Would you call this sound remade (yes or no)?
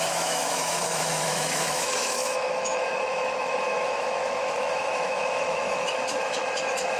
yes